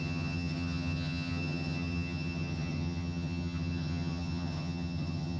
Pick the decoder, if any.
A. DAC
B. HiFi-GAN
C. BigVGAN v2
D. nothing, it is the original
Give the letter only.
B